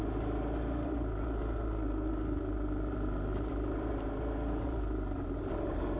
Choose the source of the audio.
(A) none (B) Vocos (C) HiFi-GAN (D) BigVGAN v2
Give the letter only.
D